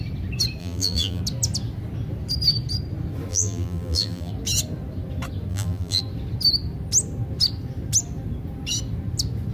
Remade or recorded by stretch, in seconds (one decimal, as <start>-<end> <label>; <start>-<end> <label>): 0.0-0.6 recorded; 0.6-1.2 remade; 1.2-3.3 recorded; 3.3-4.3 remade; 4.3-5.5 recorded; 5.5-6.0 remade; 6.0-9.5 recorded